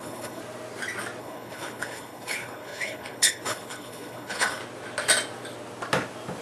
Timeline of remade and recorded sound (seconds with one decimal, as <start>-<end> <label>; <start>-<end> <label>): 0.0-0.4 remade; 0.4-1.2 recorded; 1.2-4.6 remade; 4.6-6.4 recorded